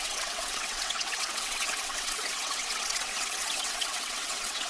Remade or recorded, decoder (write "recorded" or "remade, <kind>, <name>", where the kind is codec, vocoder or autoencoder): remade, vocoder, WaveNeXt